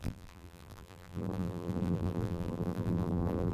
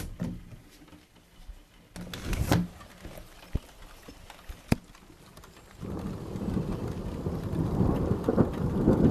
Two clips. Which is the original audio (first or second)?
second